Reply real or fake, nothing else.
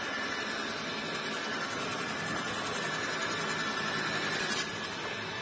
real